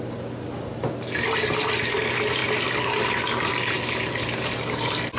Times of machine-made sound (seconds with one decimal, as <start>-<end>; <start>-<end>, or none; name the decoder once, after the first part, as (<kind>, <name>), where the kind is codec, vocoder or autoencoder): none